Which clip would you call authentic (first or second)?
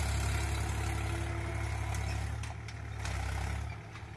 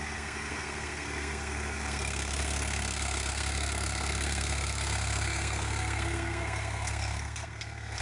first